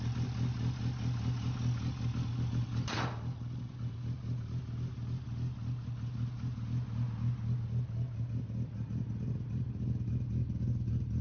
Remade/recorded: recorded